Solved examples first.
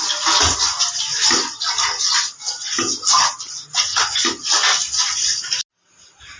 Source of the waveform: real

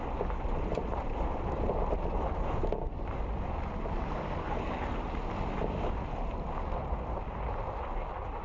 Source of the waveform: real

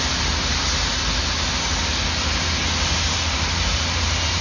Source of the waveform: real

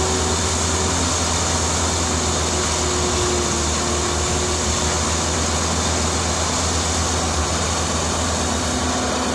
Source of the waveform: real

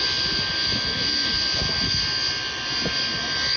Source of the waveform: real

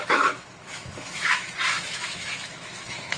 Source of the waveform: fake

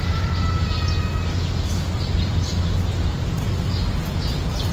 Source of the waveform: real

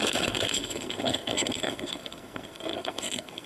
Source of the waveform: fake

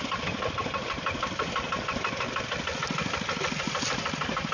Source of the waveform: real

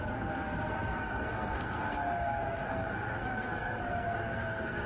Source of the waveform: fake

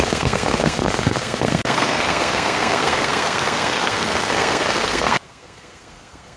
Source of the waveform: fake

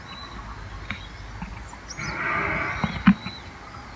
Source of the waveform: real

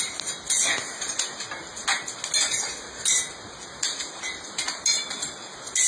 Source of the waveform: real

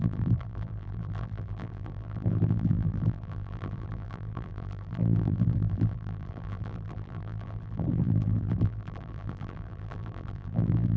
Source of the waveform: fake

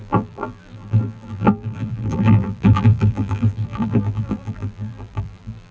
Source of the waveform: fake